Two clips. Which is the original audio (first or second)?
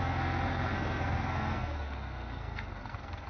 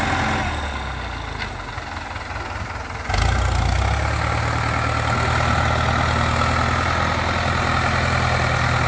second